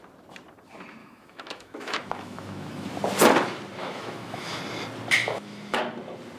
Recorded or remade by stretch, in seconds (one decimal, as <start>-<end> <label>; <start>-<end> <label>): 0.0-1.0 recorded; 1.0-2.9 remade; 2.9-3.8 recorded; 3.8-4.6 remade; 4.6-5.2 recorded; 5.2-5.8 remade; 5.8-6.4 recorded